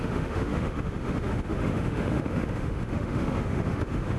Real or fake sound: fake